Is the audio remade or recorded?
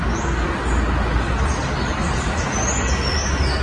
recorded